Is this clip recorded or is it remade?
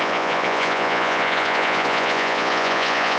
remade